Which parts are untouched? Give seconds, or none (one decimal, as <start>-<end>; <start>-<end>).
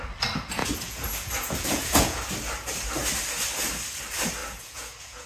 0.0-0.6; 2.3-4.4